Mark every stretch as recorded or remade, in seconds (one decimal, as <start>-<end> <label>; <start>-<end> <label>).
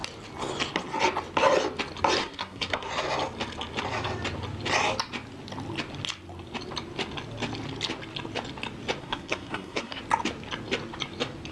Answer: 0.0-2.2 recorded; 2.2-2.9 remade; 2.9-9.0 recorded; 9.0-10.0 remade; 10.0-11.5 recorded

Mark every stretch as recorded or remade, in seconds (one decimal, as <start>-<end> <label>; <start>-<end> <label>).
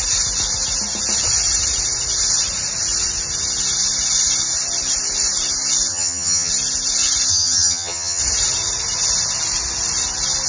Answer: 0.0-5.9 recorded; 5.9-6.5 remade; 6.5-7.3 recorded; 7.3-8.2 remade; 8.2-10.5 recorded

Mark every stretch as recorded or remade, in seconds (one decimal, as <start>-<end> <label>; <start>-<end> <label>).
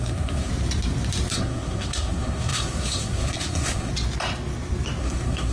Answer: 0.0-0.5 remade; 0.5-1.3 recorded; 1.3-3.9 remade; 3.9-5.0 recorded; 5.0-5.5 remade